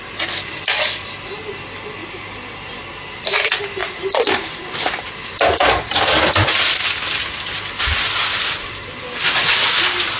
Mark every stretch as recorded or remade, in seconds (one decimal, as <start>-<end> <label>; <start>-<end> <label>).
0.0-2.0 recorded; 2.0-3.0 remade; 3.0-3.8 recorded; 3.8-8.9 remade; 8.9-10.2 recorded